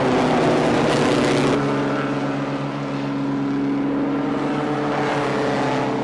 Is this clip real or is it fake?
real